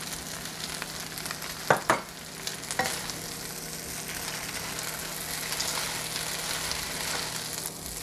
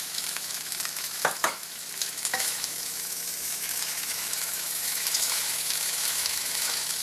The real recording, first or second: first